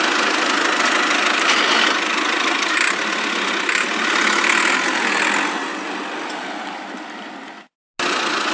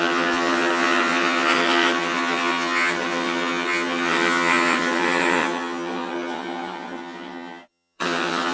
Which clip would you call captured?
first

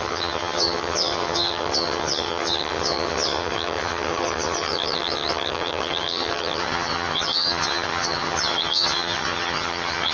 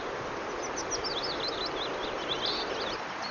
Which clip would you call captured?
second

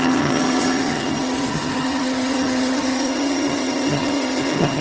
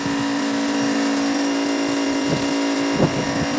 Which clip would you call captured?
second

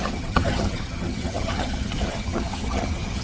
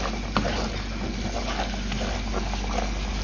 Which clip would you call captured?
second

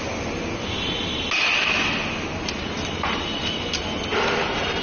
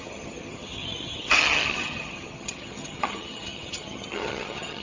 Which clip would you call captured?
first